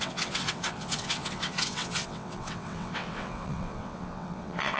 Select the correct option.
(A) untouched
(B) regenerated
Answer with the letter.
B